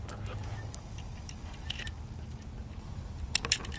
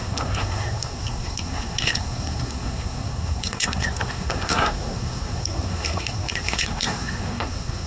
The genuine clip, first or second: first